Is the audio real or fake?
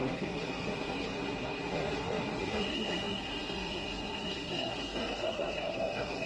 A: fake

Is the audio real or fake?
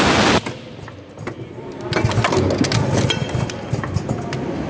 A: real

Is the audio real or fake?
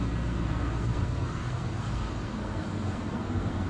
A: fake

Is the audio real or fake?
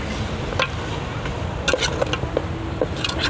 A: real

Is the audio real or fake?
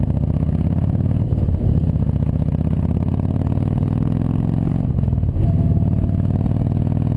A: real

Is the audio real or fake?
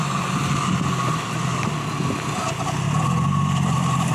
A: real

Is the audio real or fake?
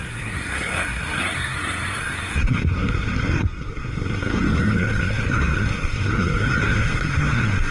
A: fake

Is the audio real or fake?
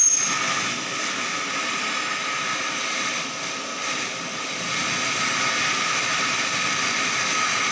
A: real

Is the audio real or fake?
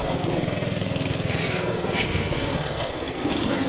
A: fake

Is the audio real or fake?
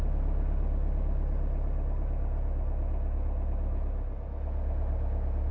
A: real